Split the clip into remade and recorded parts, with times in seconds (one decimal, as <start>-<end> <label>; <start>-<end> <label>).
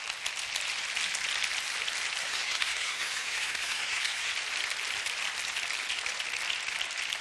0.0-2.2 recorded; 2.2-4.3 remade; 4.3-7.2 recorded